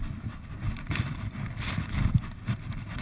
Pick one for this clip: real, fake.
real